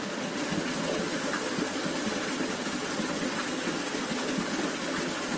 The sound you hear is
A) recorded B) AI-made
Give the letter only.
A